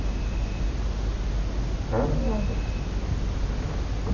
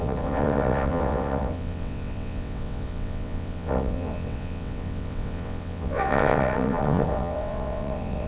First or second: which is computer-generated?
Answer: second